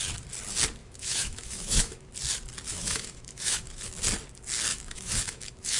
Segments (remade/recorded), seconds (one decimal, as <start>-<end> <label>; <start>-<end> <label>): 0.0-0.8 recorded; 0.8-2.1 remade; 2.1-2.7 recorded; 2.7-3.9 remade; 3.9-4.7 recorded; 4.7-5.8 remade

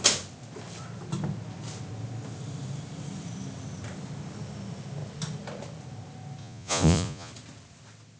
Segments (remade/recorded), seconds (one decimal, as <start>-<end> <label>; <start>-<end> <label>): 0.0-6.4 recorded; 6.4-7.3 remade; 7.3-8.2 recorded

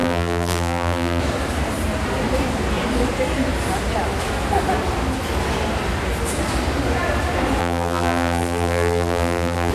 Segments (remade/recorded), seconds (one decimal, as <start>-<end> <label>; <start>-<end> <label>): 0.0-1.2 remade; 1.2-7.6 recorded; 7.6-9.7 remade

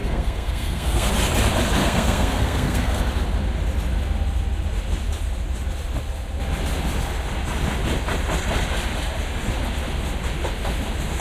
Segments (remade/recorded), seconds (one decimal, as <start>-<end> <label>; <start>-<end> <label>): 0.0-1.1 remade; 1.1-1.8 recorded; 1.8-3.0 remade; 3.0-11.2 recorded

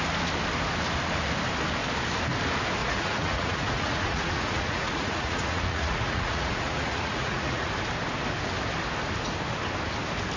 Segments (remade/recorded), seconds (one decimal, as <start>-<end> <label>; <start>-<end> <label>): 0.0-2.8 recorded; 2.8-7.7 remade; 7.7-10.4 recorded

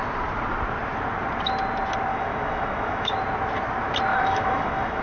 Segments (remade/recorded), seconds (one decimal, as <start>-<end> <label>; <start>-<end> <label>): 0.0-2.1 recorded; 2.1-3.2 remade; 3.2-4.1 recorded; 4.1-5.0 remade

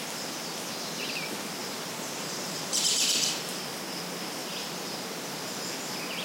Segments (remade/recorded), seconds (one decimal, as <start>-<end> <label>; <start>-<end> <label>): 0.0-1.6 recorded; 1.6-3.6 remade; 3.6-4.4 recorded; 4.4-5.6 remade; 5.6-6.2 recorded

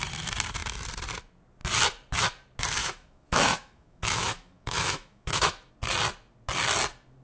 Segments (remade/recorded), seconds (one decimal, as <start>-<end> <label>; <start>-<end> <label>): 0.0-2.8 recorded; 2.8-5.7 remade; 5.7-7.2 recorded